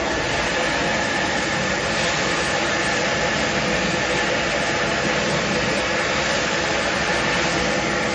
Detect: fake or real real